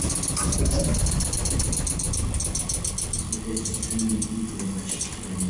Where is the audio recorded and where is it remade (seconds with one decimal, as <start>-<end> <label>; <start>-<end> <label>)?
0.0-5.5 recorded